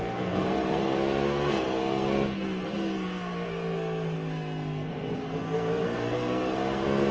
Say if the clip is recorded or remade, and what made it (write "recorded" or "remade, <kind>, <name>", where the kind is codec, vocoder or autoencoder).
remade, codec, SNAC